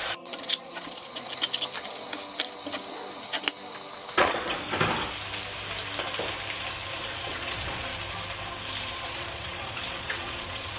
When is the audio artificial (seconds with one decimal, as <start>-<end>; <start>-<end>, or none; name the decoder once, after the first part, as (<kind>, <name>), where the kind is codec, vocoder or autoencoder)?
0.0-1.3 (vocoder, Vocos); 4.2-4.7; 6.9-7.9; 8.9-10.8